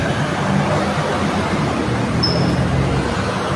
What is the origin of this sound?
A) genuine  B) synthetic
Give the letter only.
A